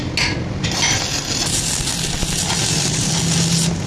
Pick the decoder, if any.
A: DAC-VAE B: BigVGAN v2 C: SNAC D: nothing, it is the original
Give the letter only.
D